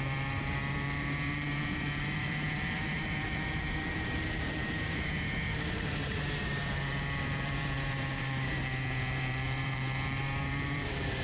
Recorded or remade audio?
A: remade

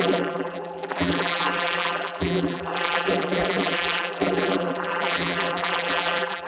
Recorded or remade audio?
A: remade